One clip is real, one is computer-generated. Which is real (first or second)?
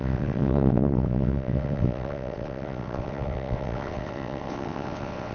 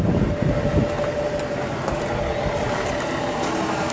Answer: second